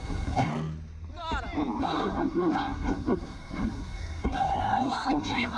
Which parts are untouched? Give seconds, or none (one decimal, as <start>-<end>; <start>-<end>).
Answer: 0.5-1.8